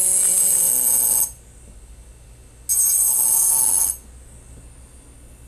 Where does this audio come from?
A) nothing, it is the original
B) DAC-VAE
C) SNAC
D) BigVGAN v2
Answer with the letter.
A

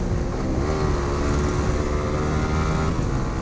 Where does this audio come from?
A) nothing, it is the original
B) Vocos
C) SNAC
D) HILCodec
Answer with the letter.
A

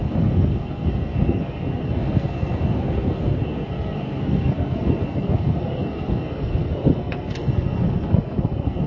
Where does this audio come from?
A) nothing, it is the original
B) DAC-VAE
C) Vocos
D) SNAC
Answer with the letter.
D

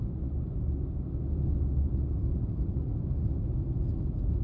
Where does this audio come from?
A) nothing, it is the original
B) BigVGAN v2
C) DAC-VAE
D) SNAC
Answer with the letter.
A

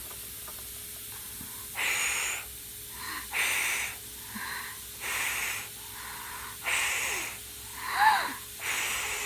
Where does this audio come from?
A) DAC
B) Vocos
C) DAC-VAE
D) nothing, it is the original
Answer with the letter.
D